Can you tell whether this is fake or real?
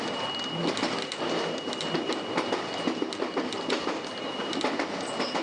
real